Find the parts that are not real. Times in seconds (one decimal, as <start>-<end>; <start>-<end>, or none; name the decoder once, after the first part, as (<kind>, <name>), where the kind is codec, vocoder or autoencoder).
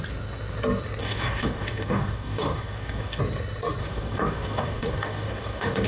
1.0-3.2 (codec, DAC); 3.8-5.9